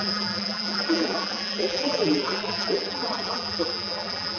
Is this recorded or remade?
remade